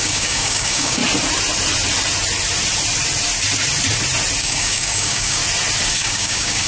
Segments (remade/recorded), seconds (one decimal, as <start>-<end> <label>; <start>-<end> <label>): 0.0-1.0 remade; 1.0-4.4 recorded; 4.4-5.4 remade; 5.4-5.9 recorded; 5.9-6.7 remade